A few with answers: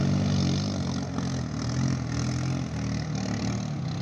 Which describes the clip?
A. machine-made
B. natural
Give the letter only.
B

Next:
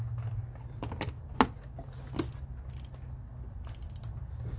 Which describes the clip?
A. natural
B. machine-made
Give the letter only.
A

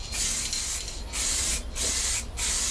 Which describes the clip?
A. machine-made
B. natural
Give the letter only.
B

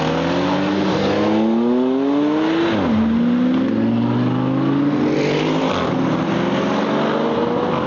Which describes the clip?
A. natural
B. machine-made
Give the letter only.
A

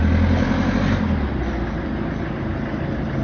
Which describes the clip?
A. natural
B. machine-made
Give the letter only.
A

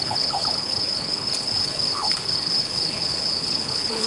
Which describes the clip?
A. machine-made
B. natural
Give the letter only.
A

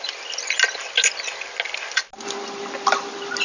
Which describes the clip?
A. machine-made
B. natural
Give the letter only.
B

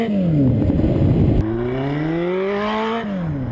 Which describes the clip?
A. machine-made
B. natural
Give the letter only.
B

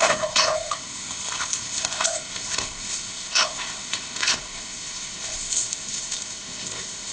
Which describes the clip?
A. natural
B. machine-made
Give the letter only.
B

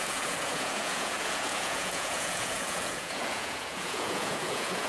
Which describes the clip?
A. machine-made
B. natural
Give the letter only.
A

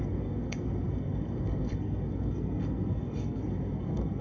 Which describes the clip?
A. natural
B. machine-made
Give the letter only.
B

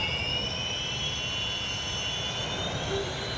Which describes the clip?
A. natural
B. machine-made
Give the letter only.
A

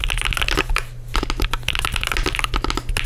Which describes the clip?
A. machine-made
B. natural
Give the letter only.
B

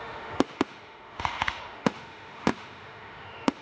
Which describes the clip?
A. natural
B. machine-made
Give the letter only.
B